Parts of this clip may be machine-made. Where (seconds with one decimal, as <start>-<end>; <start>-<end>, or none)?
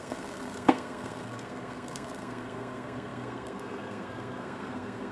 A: 0.0-5.1